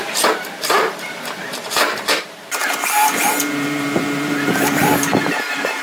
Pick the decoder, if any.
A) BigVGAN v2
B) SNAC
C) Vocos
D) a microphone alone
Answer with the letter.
A